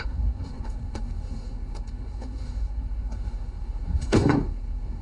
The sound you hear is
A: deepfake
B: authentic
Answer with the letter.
A